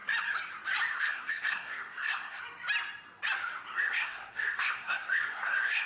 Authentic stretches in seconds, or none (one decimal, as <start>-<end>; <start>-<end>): 0.0-0.9; 2.4-3.7